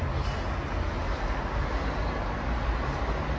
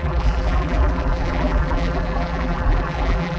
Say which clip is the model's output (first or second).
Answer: second